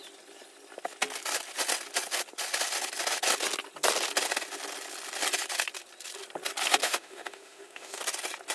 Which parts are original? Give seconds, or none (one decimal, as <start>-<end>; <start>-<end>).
0.0-6.8; 8.0-8.5

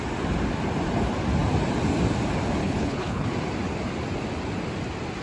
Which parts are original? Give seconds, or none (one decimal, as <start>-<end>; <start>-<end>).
0.0-2.6; 3.3-5.2

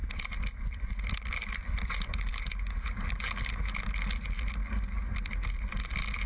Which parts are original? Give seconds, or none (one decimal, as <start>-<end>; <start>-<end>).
1.9-6.3

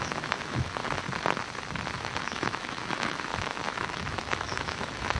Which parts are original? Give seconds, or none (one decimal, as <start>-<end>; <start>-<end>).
0.8-2.2

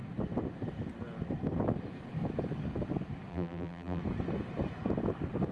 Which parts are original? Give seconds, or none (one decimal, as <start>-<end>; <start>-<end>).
0.0-3.3; 4.0-5.5

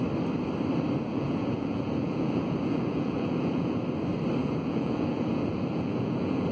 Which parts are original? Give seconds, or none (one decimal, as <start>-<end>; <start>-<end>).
0.0-1.1; 3.8-4.4

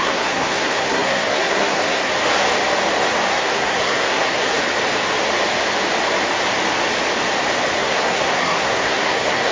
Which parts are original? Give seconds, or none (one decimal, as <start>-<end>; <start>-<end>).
2.1-3.3; 4.6-7.8